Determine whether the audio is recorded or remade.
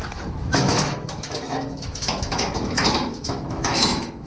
remade